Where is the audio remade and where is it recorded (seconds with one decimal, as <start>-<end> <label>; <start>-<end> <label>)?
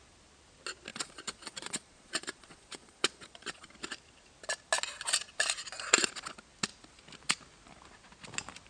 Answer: 0.0-0.9 recorded; 0.9-3.7 remade; 3.7-8.7 recorded